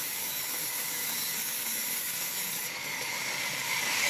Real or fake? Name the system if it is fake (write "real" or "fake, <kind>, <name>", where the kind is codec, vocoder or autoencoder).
fake, codec, DAC